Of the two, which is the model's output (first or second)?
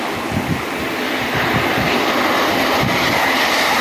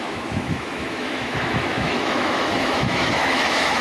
second